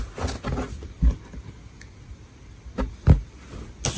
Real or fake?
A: real